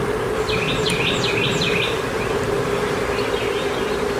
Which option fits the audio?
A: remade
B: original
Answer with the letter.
A